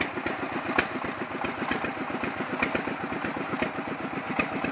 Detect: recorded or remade recorded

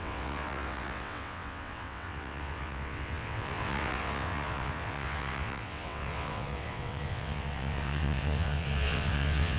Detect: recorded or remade remade